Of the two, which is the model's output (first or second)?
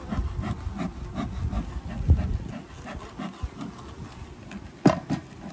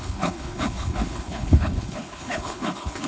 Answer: second